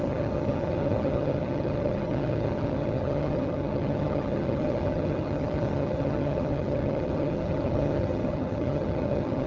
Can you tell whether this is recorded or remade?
remade